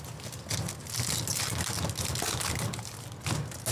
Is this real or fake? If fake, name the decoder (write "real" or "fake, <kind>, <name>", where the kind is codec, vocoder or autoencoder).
real